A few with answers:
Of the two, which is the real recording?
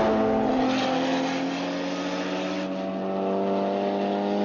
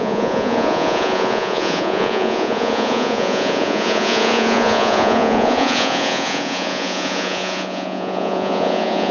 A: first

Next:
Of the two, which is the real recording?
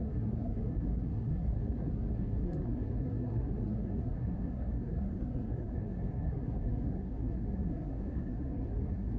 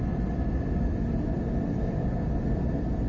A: second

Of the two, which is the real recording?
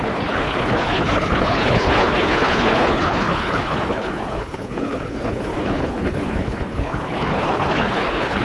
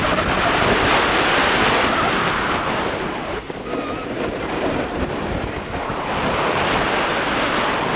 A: second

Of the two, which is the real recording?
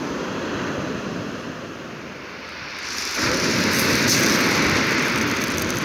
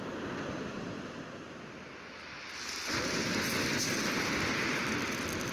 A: second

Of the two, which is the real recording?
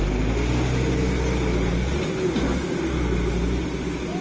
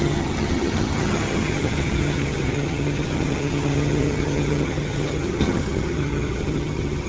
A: first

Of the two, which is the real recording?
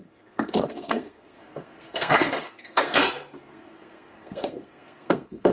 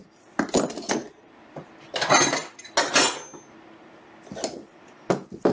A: second